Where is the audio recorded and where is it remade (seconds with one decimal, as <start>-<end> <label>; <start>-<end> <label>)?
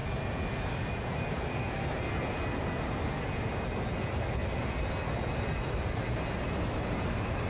0.0-7.5 recorded